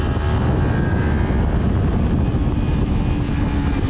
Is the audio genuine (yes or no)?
yes